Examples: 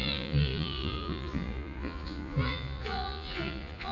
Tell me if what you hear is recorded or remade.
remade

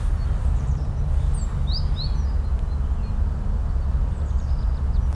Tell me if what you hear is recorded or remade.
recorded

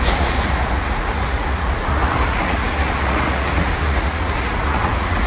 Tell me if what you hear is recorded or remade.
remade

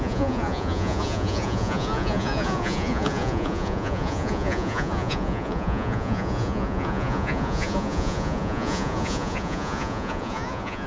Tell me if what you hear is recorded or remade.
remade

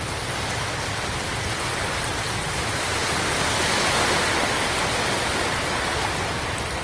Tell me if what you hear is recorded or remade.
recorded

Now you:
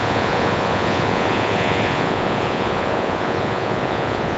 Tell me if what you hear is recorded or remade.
remade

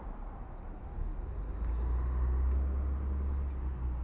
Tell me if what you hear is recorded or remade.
recorded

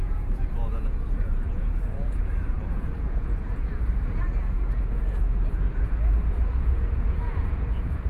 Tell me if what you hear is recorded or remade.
remade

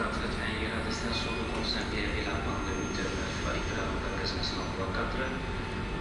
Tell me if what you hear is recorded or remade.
recorded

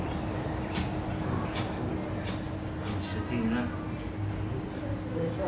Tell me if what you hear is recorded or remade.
recorded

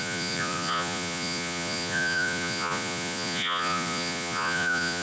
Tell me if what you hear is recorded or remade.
remade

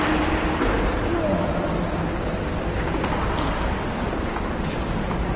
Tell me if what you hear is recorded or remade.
recorded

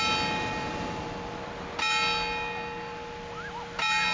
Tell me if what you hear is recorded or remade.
recorded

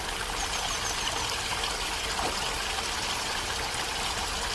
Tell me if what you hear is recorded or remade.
recorded